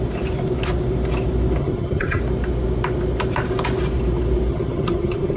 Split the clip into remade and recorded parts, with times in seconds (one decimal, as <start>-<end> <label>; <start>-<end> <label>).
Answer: 0.0-1.6 recorded; 1.6-2.2 remade; 2.2-4.5 recorded; 4.5-5.4 remade